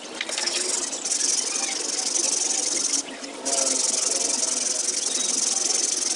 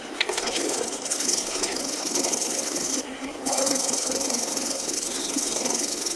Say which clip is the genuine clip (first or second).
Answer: first